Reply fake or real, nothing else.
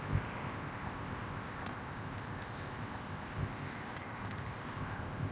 fake